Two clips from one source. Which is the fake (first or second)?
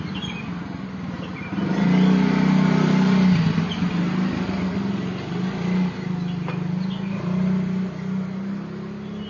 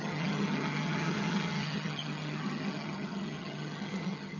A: second